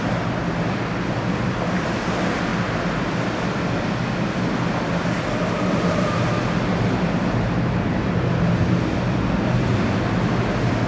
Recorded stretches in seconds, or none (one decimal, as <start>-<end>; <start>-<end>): 0.0-10.9

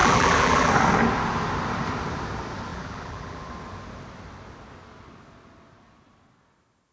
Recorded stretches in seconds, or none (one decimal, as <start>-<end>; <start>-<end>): 0.7-2.7; 3.5-6.9

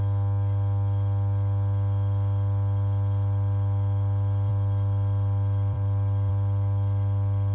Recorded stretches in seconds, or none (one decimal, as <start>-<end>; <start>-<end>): 0.0-4.5; 6.3-7.5

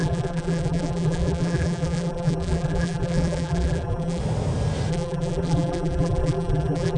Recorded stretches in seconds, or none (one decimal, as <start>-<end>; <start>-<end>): 4.2-4.9

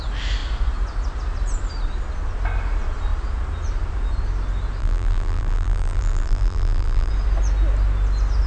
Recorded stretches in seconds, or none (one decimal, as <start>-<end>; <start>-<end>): 0.0-4.8; 7.1-8.5

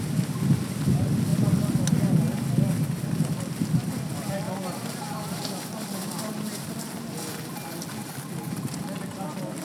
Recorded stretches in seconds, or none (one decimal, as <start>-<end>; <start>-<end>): 0.0-9.6